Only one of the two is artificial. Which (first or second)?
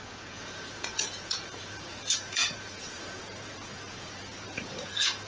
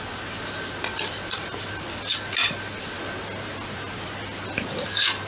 first